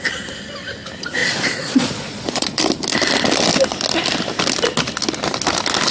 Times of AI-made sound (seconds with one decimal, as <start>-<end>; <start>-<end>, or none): 1.2-2.6